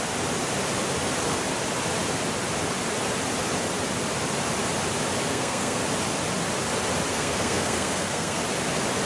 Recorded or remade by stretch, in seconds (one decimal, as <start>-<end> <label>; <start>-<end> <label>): 0.0-5.3 recorded; 5.3-5.8 remade; 5.8-7.1 recorded; 7.1-8.4 remade; 8.4-9.1 recorded